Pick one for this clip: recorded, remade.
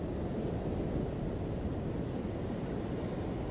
recorded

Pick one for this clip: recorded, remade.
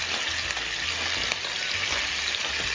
recorded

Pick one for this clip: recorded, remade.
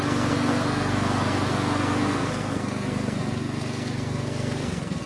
remade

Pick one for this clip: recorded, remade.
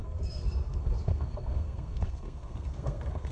remade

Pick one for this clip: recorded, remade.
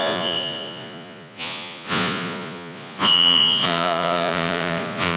remade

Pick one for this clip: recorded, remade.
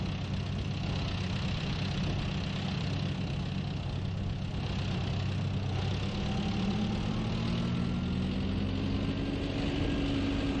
recorded